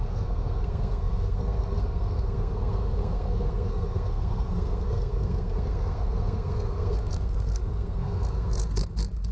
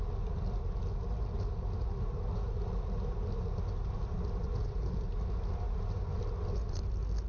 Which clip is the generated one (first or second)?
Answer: first